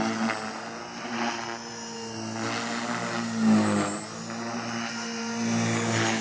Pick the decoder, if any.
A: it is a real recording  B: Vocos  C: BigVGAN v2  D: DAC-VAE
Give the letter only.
A